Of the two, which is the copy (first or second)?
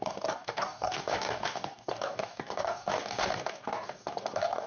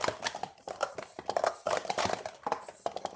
first